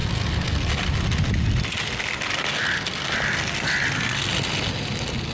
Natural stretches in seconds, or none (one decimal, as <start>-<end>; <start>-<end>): 0.0-5.3